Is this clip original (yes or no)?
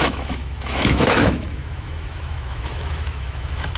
no